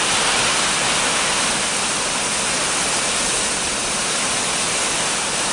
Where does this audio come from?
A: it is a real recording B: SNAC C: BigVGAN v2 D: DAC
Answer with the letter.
A